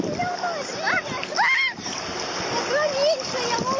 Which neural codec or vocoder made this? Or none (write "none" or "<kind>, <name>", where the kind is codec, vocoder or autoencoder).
none